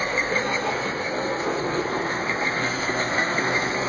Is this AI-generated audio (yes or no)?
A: yes